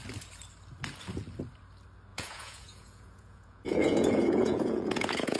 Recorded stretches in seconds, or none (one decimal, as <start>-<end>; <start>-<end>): 0.0-2.1